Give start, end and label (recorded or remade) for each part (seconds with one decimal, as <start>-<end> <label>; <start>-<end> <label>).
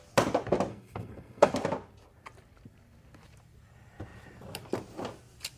0.0-0.7 recorded; 0.7-1.5 remade; 1.5-5.6 recorded